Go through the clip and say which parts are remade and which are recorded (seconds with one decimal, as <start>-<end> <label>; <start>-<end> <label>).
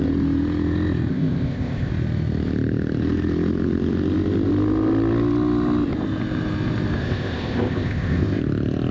0.0-1.1 recorded; 1.1-1.9 remade; 1.9-7.0 recorded; 7.0-8.4 remade; 8.4-8.9 recorded